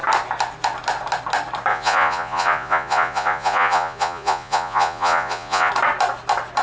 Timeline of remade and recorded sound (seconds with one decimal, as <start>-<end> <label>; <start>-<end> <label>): 0.0-1.7 recorded; 1.7-5.7 remade; 5.7-6.6 recorded

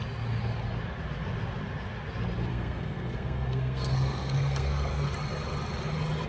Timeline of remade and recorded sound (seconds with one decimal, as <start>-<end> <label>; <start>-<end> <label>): 0.0-2.5 recorded; 2.5-5.1 remade; 5.1-6.3 recorded

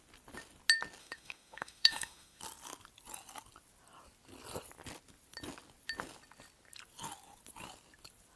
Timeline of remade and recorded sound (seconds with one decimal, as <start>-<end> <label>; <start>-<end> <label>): 0.0-1.0 recorded; 1.0-2.4 remade; 2.4-8.4 recorded